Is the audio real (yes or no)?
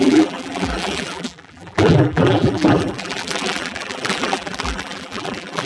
no